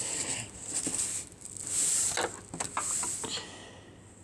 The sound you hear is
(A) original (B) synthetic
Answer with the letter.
A